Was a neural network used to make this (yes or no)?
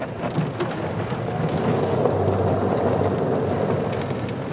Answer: no